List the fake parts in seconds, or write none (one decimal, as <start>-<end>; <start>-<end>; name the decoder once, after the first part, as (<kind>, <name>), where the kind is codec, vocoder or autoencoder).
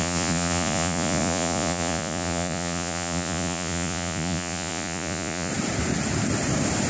0.0-5.5 (vocoder, Vocos)